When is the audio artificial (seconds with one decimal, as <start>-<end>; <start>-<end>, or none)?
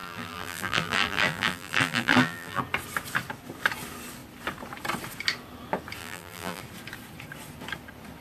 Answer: 0.0-2.6; 6.0-6.6